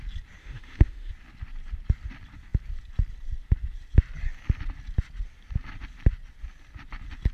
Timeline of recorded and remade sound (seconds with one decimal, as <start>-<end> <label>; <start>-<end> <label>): 0.0-0.4 recorded; 0.4-1.1 remade; 1.1-7.3 recorded